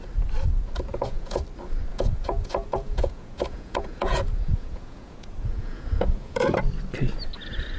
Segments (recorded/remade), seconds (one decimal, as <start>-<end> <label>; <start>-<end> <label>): 0.0-0.9 recorded; 0.9-1.4 remade; 1.4-1.9 recorded; 1.9-6.6 remade; 6.6-7.8 recorded